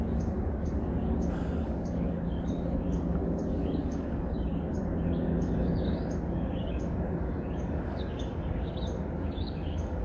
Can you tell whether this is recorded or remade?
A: remade